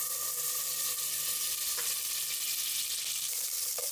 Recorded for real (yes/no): yes